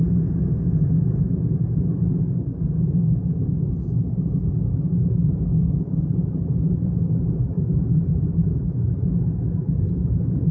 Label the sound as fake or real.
real